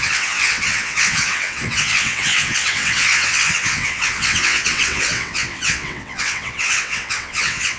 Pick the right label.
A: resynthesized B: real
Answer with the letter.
A